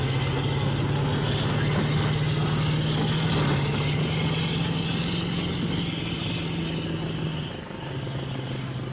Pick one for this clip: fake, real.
real